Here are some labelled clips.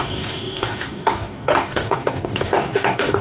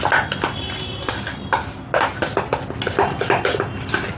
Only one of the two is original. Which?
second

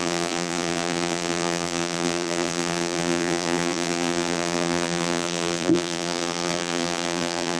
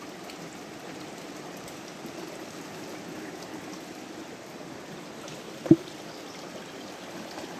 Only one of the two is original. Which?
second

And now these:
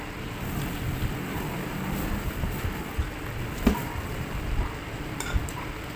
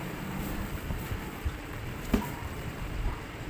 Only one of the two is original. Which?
first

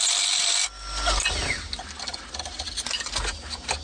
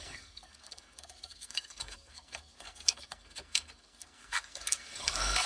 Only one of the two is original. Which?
first